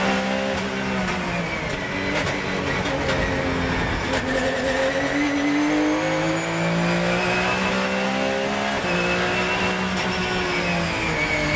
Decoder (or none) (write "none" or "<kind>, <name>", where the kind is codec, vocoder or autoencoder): none